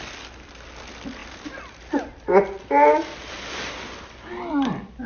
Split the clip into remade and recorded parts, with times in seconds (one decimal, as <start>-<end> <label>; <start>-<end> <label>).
0.0-5.1 recorded